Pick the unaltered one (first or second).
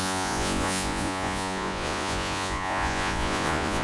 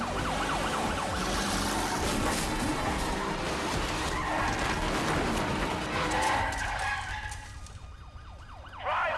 second